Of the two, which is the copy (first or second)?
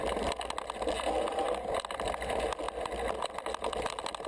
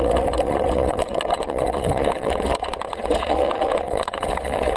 second